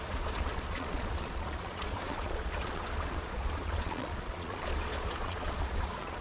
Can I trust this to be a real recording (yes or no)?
no